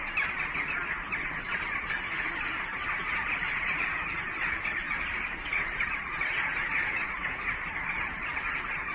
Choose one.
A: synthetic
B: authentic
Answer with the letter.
B